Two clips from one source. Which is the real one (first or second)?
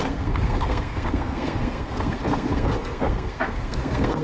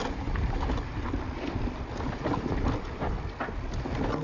second